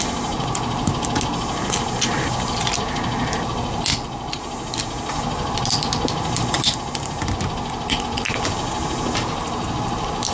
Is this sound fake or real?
real